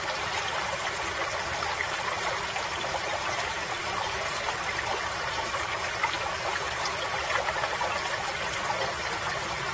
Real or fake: fake